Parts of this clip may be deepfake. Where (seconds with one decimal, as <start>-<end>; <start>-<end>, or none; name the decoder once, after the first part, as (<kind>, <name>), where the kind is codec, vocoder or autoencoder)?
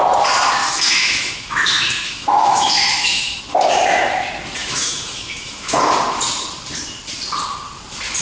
0.6-3.4 (autoencoder, DAC-VAE); 4.6-5.8